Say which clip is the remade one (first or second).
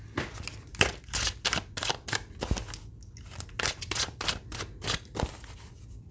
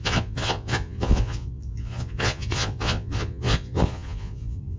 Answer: second